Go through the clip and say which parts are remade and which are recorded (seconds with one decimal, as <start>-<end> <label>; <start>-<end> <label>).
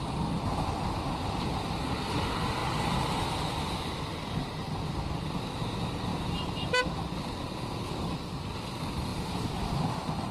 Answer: 0.0-6.1 recorded; 6.1-7.0 remade; 7.0-9.1 recorded; 9.1-9.8 remade; 9.8-10.3 recorded